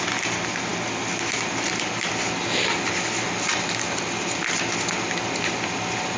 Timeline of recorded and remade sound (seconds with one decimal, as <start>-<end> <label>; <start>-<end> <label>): 0.0-6.2 recorded